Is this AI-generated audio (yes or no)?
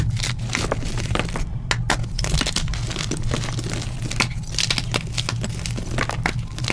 no